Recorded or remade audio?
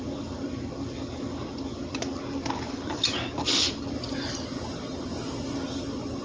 recorded